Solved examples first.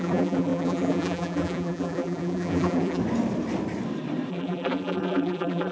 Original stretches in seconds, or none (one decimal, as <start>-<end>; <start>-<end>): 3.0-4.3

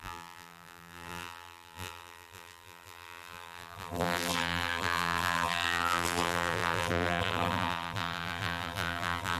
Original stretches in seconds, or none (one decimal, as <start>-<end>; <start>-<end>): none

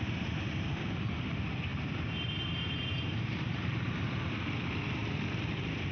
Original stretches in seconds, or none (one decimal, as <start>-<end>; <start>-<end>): 0.0-1.7; 4.5-5.9